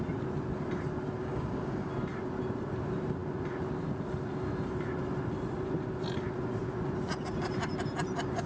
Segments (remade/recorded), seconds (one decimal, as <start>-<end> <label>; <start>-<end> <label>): 0.0-1.2 recorded; 1.2-1.9 remade; 1.9-8.5 recorded